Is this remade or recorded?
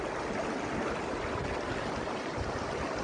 recorded